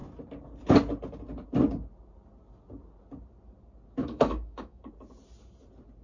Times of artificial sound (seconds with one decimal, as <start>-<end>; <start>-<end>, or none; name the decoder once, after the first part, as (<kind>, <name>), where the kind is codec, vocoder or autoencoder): 4.0-4.8 (autoencoder, DAC-VAE)